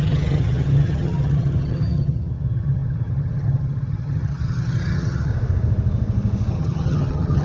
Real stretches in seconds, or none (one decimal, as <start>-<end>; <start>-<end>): 5.3-6.5